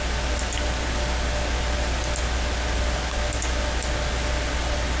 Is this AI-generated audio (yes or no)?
no